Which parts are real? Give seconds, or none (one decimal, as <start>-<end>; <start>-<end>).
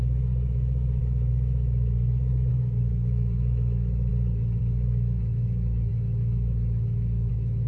4.1-4.6